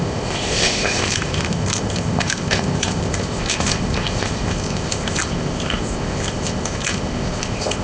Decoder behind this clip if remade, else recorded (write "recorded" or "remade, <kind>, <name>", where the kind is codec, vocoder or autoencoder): remade, codec, ZipCodec